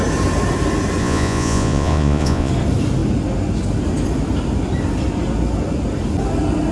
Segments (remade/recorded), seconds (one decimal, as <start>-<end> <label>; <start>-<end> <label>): 0.0-1.0 recorded; 1.0-2.5 remade; 2.5-6.7 recorded